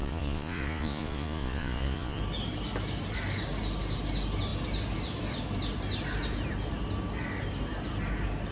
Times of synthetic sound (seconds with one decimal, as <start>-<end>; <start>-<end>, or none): 0.0-2.2